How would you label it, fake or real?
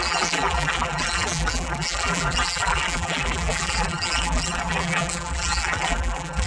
fake